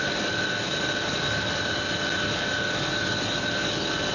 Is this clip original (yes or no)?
yes